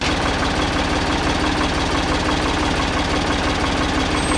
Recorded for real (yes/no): yes